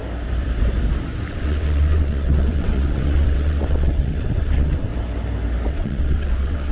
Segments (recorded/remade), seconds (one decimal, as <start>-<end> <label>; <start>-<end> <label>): 0.0-1.3 recorded; 1.3-4.9 remade; 4.9-5.7 recorded; 5.7-6.7 remade